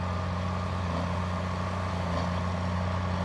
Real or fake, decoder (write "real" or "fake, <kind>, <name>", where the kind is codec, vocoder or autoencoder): real